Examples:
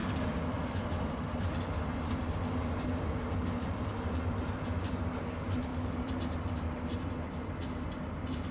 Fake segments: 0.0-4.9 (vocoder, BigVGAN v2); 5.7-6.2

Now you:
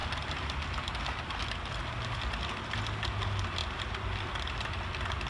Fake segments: none

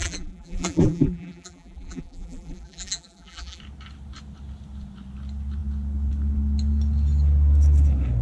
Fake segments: 0.0-3.6 (vocoder, BigVGAN v2)